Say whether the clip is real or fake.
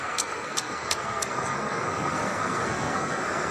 fake